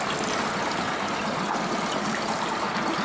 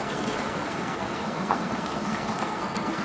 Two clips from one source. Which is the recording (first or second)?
first